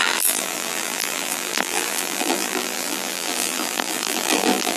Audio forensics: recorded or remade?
remade